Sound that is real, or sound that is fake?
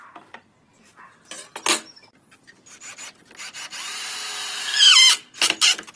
real